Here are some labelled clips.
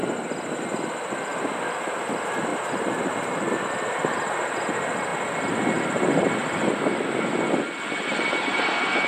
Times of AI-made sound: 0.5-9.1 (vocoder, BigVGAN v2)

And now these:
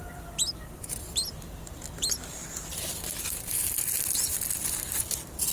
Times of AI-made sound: none

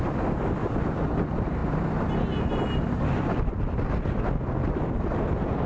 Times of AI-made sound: none

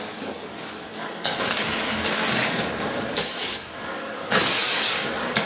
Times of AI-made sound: 0.0-5.5 (codec, DAC)

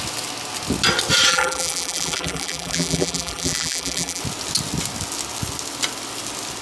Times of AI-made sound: 1.3-4.2 (vocoder, BigVGAN v2)

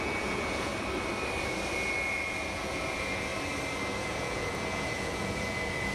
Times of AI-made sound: 0.0-0.7 (vocoder, Vocos); 1.7-3.3; 4.0-5.9

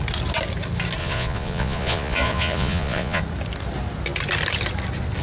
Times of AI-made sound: 1.0-3.2 (vocoder, Vocos)